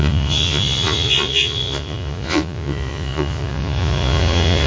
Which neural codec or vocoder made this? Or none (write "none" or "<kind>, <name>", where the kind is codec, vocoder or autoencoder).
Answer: vocoder, Vocos